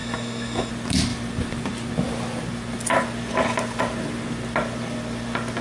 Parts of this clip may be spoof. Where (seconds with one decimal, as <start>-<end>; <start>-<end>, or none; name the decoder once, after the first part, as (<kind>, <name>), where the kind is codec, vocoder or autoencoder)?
0.0-0.7 (autoencoder, DAC-VAE)